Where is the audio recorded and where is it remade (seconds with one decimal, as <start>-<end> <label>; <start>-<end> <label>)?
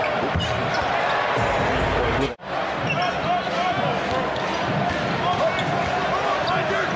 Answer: 0.0-7.0 recorded